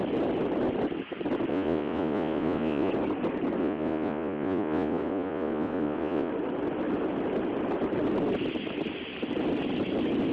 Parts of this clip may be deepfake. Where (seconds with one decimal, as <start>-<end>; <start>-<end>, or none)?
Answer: 1.5-2.9; 3.6-6.3